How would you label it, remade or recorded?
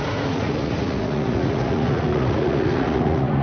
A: remade